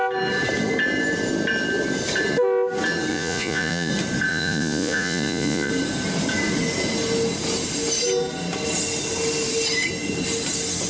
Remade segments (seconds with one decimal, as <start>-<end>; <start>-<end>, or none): 3.1-3.9; 4.3-5.7